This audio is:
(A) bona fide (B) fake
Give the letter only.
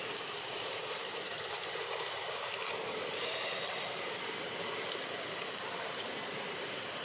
B